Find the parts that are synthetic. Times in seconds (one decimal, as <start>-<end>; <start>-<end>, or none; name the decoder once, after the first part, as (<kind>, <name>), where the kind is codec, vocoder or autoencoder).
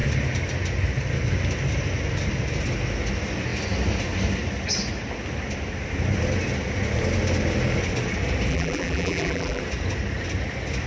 8.5-9.6 (vocoder, BigVGAN v2)